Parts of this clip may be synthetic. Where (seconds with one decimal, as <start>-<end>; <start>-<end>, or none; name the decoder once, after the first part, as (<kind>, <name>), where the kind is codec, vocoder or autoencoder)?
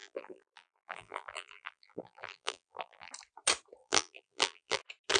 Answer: 0.0-3.1 (vocoder, BigVGAN v2); 3.8-4.8